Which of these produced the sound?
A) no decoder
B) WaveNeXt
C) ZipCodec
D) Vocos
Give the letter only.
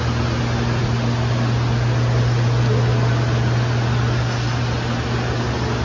A